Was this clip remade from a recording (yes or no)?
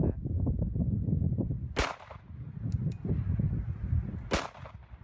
no